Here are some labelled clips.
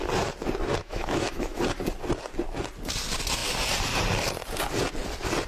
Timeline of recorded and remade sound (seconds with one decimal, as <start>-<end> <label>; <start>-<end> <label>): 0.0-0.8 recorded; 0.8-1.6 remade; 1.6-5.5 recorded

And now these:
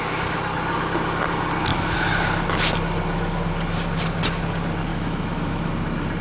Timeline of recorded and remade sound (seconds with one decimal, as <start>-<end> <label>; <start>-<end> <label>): 0.0-1.7 recorded; 1.7-2.2 remade; 2.2-4.9 recorded; 4.9-5.7 remade; 5.7-6.2 recorded

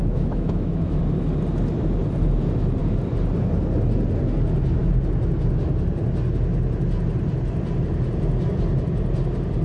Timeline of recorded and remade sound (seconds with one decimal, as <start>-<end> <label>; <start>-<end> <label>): 0.0-1.0 remade; 1.0-9.6 recorded